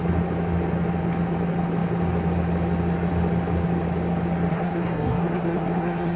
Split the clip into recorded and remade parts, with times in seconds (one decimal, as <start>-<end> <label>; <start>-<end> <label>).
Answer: 0.0-4.5 recorded; 4.5-6.2 remade

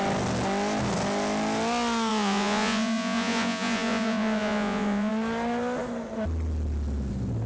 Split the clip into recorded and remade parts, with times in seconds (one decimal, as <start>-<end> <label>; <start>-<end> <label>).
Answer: 0.0-2.1 recorded; 2.1-5.1 remade; 5.1-7.5 recorded

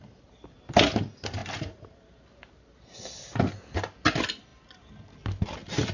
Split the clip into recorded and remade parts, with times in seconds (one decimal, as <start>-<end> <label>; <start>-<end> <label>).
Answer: 0.0-5.9 recorded

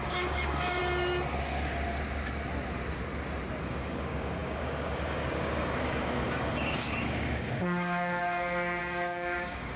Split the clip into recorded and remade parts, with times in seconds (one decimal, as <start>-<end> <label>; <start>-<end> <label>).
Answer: 0.0-0.8 remade; 0.8-3.6 recorded; 3.6-9.8 remade